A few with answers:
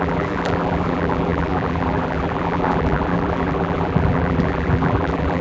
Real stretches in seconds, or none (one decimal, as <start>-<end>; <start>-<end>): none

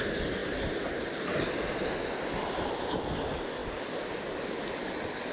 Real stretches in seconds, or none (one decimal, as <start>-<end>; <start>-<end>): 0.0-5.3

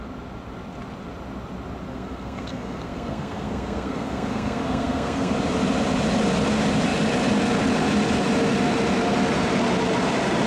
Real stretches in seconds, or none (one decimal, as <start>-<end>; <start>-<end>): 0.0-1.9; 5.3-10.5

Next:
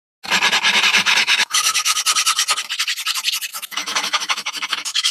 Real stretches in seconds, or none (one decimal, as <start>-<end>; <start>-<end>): 0.0-0.9; 2.0-3.5